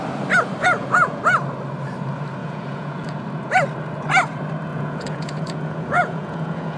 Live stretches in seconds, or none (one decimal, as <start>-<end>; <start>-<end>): 0.0-0.6; 1.2-2.4; 3.2-4.7